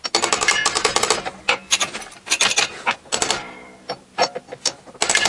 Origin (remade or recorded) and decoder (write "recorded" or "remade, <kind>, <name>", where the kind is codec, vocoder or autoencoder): recorded